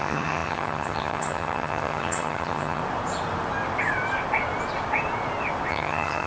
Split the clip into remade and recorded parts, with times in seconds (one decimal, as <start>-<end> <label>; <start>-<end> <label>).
0.0-2.8 remade; 2.8-5.7 recorded; 5.7-6.3 remade